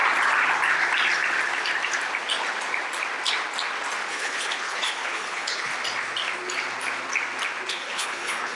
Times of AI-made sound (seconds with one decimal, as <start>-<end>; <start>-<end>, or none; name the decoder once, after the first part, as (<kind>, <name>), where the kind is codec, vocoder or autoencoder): 4.1-5.7 (codec, HILCodec); 7.7-8.6

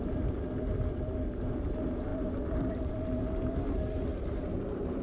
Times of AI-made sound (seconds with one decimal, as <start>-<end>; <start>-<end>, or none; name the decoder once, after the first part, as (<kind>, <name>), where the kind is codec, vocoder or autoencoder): none